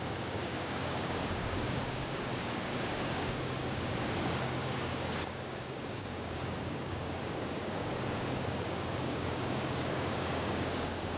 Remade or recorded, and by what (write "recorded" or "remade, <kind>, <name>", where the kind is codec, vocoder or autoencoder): remade, codec, DAC